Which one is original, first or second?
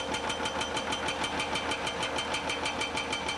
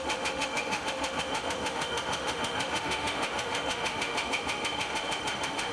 first